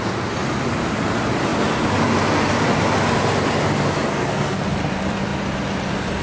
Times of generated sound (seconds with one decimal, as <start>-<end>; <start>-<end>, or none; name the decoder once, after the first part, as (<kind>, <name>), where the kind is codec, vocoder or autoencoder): 4.1-4.6 (codec, SNAC)